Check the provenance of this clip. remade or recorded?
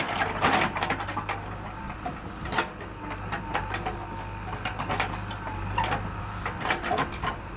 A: recorded